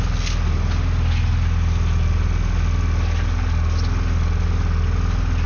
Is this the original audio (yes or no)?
yes